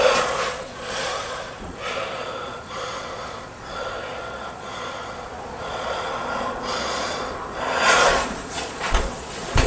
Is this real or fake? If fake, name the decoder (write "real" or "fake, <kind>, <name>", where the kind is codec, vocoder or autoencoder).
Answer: fake, vocoder, Vocos